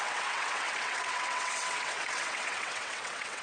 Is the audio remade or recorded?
remade